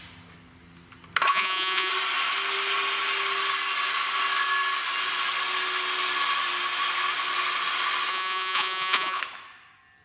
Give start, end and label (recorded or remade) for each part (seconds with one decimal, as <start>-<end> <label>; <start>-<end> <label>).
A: 0.0-1.3 recorded; 1.3-1.9 remade; 1.9-8.1 recorded; 8.1-9.2 remade; 9.2-10.0 recorded